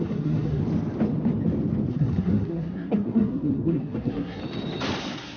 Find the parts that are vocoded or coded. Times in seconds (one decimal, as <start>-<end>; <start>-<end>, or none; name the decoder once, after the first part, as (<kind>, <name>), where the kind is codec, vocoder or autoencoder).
0.0-0.6 (codec, SNAC); 1.9-4.4; 5.0-5.4